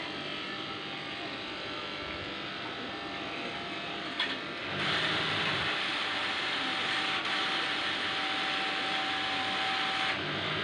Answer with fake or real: real